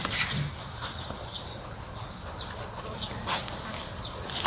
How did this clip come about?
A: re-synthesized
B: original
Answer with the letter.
B